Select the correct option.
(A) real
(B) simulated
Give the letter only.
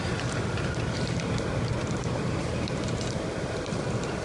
B